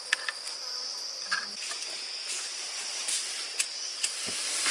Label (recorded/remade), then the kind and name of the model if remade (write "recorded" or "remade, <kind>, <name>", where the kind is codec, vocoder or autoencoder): recorded